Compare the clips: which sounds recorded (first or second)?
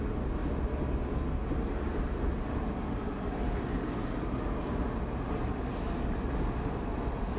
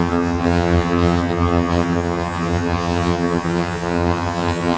first